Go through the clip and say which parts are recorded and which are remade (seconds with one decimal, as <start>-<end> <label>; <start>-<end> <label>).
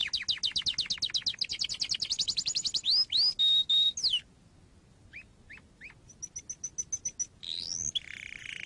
0.0-8.7 recorded